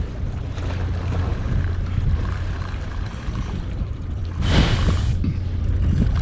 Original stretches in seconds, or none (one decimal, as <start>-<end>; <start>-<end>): 0.0-1.3; 4.2-6.2